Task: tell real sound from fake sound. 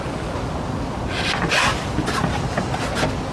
real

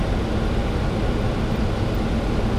real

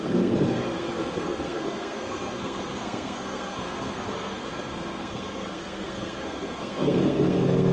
fake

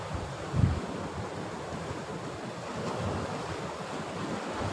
real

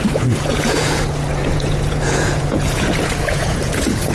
fake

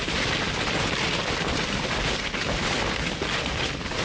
real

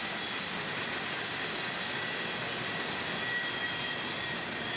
real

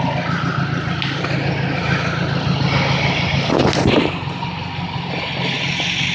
real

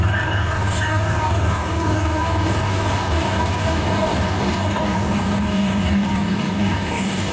fake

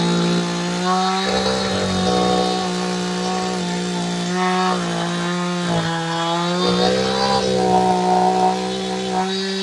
real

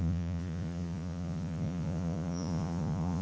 fake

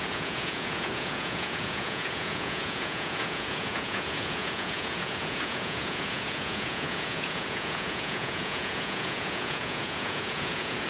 fake